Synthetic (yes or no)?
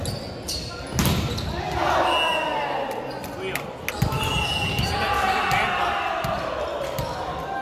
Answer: no